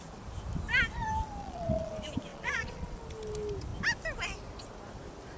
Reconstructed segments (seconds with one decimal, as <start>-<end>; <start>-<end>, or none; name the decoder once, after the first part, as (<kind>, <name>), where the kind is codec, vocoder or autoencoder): 1.4-1.9 (vocoder, Vocos); 2.3-3.0